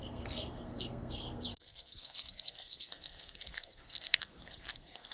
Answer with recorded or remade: remade